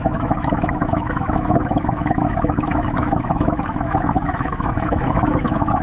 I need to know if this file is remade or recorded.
remade